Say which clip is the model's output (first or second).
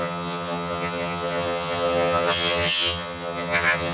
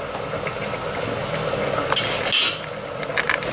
first